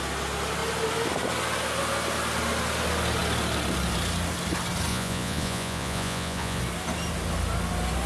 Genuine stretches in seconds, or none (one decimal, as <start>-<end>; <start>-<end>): 0.0-4.9; 6.6-8.1